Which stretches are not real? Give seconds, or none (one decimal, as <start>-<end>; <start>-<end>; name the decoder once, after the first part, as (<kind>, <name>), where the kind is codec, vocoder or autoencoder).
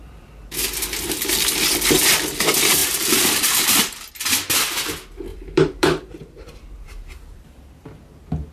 2.8-4.1 (vocoder, BigVGAN v2); 5.3-7.9